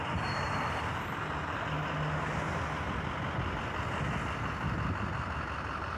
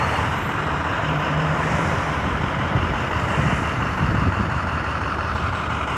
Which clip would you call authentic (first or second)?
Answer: first